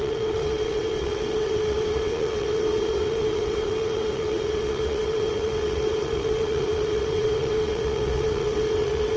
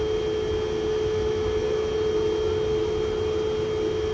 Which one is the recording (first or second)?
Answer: second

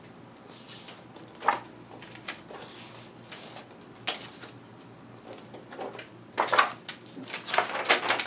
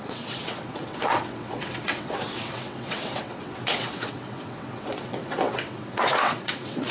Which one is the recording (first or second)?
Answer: first